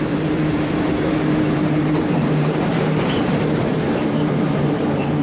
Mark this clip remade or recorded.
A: remade